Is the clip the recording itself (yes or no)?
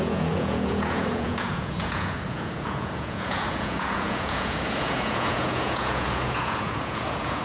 no